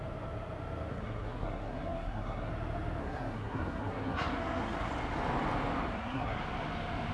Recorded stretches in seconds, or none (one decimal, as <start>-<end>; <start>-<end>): 0.0-0.9; 2.5-3.0; 4.9-5.9; 6.4-7.1